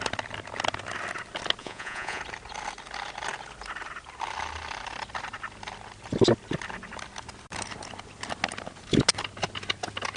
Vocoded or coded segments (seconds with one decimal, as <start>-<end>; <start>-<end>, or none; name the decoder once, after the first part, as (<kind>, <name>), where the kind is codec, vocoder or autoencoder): 1.6-2.2 (vocoder, Vocos)